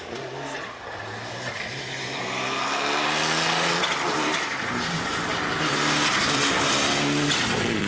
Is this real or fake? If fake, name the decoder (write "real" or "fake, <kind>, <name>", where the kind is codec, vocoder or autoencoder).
real